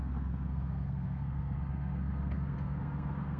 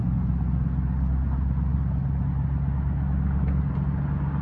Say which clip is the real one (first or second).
second